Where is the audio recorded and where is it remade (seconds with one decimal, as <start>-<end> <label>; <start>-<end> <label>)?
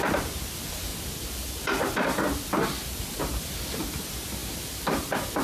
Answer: 0.0-5.4 recorded